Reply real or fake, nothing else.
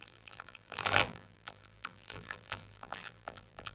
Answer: fake